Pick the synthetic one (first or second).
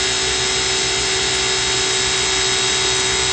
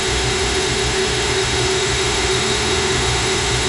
second